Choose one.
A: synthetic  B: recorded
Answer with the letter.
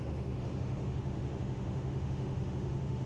A